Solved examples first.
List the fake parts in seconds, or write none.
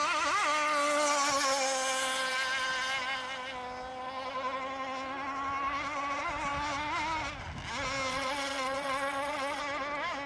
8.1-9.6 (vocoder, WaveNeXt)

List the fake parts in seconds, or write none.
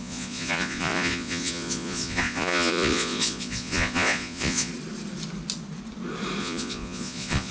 0.0-4.7 (vocoder, Vocos); 6.4-7.5